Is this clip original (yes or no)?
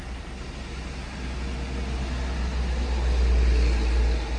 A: yes